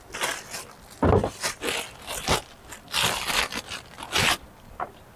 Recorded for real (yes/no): yes